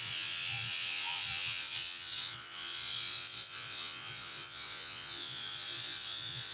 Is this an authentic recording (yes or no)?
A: no